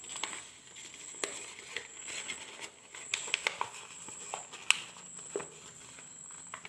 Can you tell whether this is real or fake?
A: real